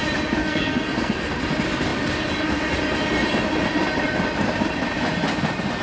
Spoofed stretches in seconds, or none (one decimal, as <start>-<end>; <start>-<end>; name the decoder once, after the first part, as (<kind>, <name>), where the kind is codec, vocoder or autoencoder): 0.4-1.4 (codec, SNAC)